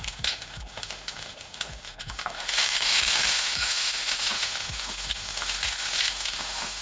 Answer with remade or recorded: remade